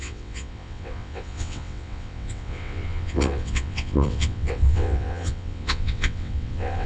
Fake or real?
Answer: fake